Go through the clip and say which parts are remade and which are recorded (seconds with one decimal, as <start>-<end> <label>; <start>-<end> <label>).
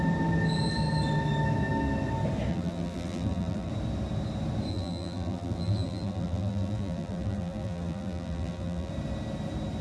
0.0-2.5 recorded; 2.5-3.7 remade; 3.7-4.7 recorded; 4.7-8.9 remade; 8.9-9.8 recorded